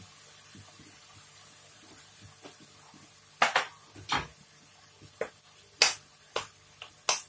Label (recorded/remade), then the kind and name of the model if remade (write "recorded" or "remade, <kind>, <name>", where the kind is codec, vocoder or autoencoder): recorded